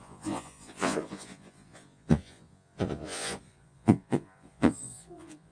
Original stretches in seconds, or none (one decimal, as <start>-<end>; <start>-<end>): none